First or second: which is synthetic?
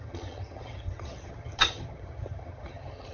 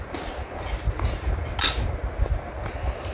first